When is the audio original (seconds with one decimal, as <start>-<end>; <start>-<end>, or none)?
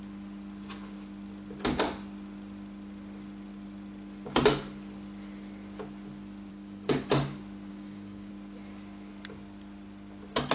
0.0-6.5; 7.0-7.7; 8.3-10.5